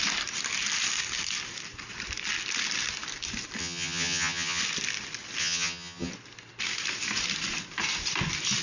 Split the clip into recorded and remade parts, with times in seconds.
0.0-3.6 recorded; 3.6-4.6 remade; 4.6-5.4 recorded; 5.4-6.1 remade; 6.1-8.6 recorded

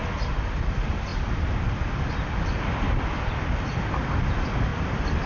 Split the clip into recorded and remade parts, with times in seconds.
0.0-5.3 recorded

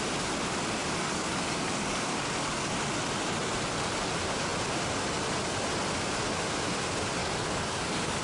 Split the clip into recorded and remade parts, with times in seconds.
0.0-0.8 recorded; 0.8-2.7 remade; 2.7-7.2 recorded; 7.2-8.2 remade

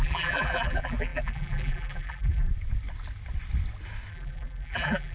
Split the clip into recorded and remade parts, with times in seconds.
0.0-2.5 remade; 2.5-4.1 recorded; 4.1-5.1 remade

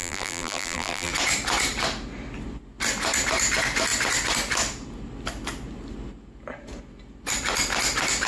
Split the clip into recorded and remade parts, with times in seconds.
0.0-1.1 remade; 1.1-8.3 recorded

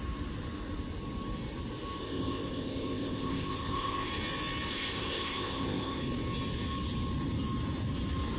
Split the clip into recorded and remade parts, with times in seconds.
0.0-2.0 recorded; 2.0-4.1 remade; 4.1-4.7 recorded; 4.7-6.0 remade; 6.0-8.4 recorded